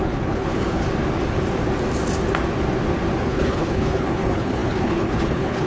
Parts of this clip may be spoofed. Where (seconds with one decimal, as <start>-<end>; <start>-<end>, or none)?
0.0-0.8; 3.2-5.7